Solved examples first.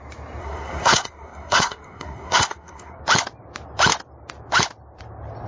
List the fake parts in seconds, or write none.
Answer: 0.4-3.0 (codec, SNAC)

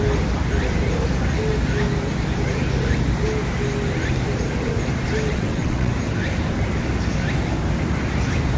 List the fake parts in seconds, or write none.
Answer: 5.3-5.9 (vocoder, WaveNeXt)

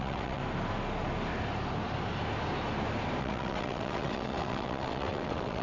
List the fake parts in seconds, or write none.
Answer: 0.0-0.4 (vocoder, WaveNeXt); 3.2-5.6

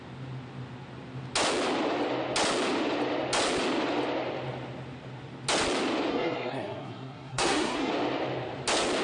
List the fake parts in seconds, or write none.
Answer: 6.1-7.9 (codec, SNAC)

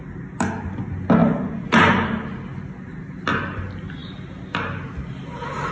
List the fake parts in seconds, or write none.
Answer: none

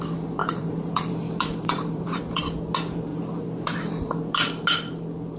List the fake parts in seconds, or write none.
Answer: 0.4-2.4 (vocoder, BigVGAN v2); 3.1-3.8